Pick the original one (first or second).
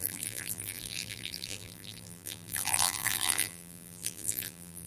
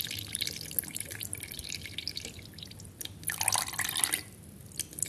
second